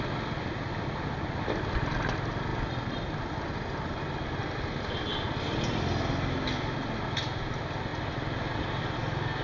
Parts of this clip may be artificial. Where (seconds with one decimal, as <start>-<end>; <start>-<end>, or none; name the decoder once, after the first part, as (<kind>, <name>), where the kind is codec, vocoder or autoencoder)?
none